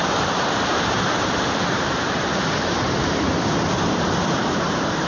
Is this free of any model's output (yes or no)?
no